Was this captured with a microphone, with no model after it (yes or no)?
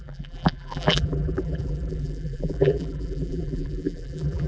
no